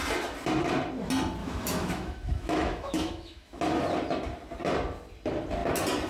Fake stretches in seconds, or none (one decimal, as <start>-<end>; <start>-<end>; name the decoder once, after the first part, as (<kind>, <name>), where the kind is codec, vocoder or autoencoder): 1.4-3.6 (autoencoder, DAC-VAE)